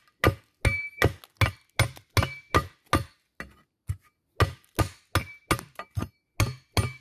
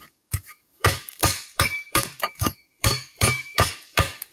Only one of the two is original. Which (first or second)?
first